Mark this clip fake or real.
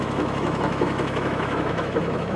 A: fake